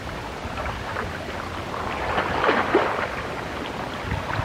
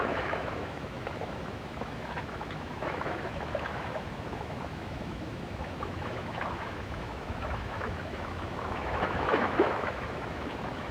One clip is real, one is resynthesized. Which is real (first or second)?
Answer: first